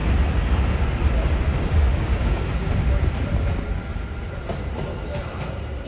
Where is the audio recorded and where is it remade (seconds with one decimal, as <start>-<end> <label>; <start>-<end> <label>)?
0.0-1.6 recorded; 1.6-2.7 remade; 2.7-5.9 recorded